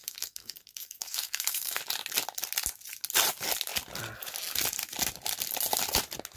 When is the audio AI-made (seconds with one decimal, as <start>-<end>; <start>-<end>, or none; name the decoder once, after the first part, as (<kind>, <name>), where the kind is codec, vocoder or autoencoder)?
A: 0.0-1.8 (codec, SNAC)